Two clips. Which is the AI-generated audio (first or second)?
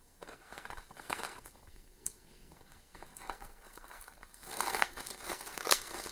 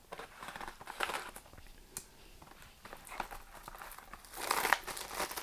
first